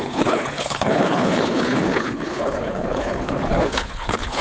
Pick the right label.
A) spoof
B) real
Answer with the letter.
A